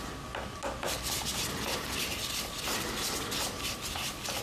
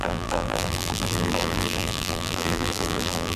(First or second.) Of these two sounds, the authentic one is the first